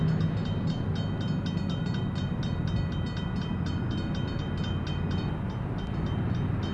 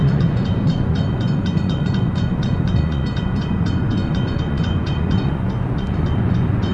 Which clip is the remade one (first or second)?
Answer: second